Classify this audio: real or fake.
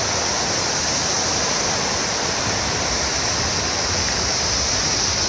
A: real